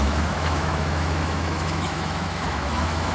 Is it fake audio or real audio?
fake